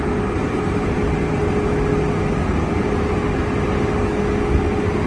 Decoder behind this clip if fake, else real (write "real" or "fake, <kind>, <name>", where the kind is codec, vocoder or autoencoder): real